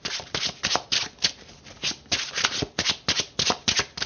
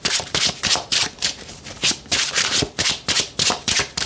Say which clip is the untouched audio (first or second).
first